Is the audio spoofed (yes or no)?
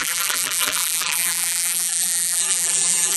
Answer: yes